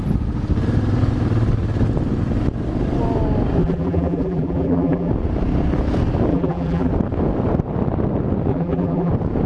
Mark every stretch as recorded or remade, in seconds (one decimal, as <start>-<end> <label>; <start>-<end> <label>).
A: 0.0-3.6 recorded; 3.6-5.1 remade; 5.1-6.3 recorded; 6.3-6.9 remade; 6.9-8.5 recorded; 8.5-9.1 remade; 9.1-9.5 recorded